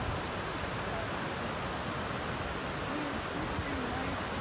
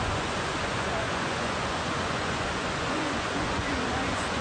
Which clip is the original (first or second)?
first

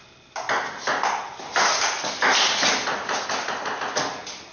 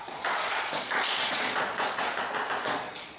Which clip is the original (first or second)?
first